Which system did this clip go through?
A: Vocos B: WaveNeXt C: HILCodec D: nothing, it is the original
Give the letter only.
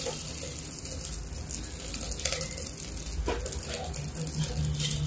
D